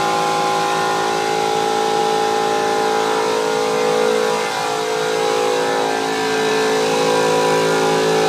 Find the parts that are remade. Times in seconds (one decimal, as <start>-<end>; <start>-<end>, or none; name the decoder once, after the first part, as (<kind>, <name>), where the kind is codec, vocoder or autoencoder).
none